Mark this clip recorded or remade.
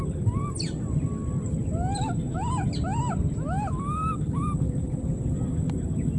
recorded